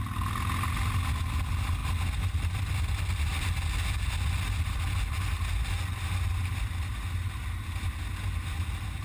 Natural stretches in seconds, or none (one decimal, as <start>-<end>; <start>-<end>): 0.0-9.0